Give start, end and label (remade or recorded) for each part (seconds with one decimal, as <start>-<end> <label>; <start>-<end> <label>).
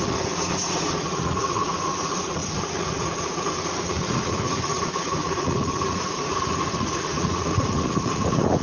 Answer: 0.0-8.6 remade